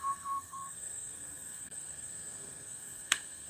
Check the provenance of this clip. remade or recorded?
remade